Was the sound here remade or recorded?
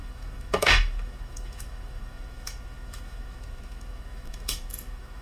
remade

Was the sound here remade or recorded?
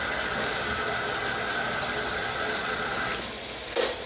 recorded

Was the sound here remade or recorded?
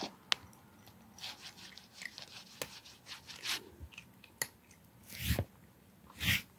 recorded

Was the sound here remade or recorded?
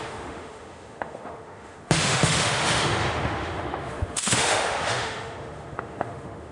remade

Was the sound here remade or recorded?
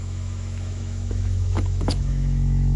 remade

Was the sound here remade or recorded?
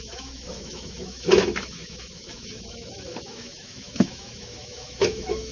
remade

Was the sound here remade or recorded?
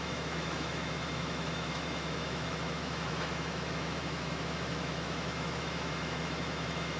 remade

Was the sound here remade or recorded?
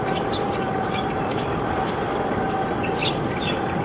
recorded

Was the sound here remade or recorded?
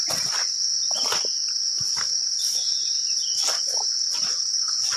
recorded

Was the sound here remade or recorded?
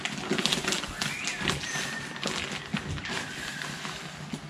recorded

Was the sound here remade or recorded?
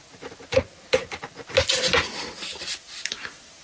recorded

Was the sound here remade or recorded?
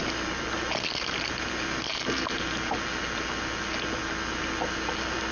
recorded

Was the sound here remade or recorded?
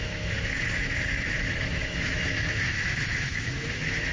remade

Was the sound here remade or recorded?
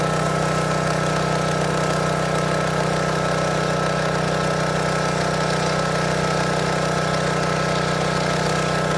recorded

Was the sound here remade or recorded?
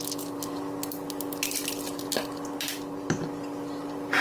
recorded